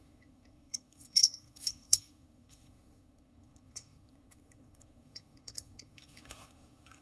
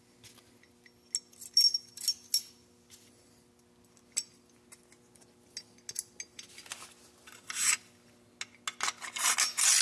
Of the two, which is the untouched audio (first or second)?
second